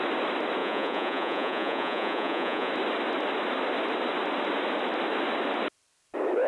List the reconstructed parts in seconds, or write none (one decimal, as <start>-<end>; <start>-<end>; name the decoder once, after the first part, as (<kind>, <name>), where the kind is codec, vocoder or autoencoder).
0.6-2.7 (vocoder, Vocos)